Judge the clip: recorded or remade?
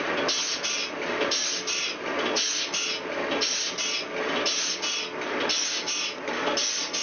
recorded